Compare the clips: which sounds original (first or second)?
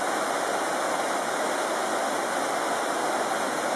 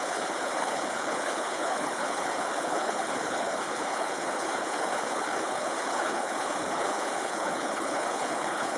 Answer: first